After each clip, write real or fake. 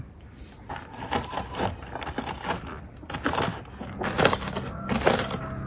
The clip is real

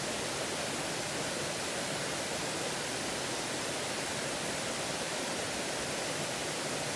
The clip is real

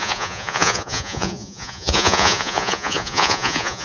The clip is fake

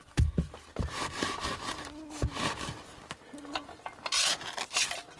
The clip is real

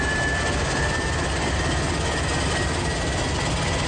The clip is real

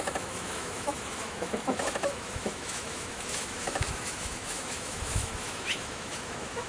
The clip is fake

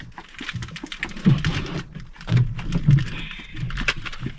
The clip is real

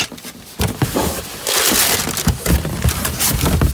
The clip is real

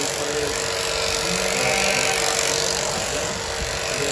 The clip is real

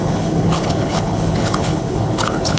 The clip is fake